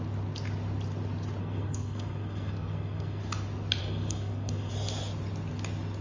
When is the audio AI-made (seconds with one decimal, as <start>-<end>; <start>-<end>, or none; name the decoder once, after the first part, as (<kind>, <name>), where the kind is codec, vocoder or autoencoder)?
1.4-3.2 (codec, SNAC); 3.8-4.7